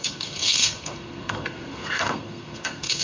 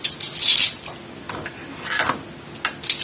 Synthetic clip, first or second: first